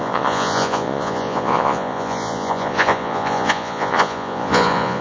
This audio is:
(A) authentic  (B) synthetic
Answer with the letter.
B